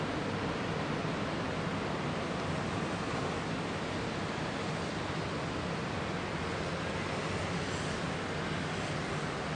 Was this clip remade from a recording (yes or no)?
no